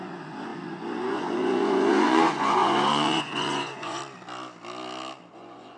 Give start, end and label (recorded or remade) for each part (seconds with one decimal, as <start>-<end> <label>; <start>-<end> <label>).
0.0-4.0 remade; 4.0-5.3 recorded; 5.3-5.8 remade